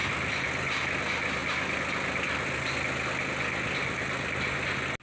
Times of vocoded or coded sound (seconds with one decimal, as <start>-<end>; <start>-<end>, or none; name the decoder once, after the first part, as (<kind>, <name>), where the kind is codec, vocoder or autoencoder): none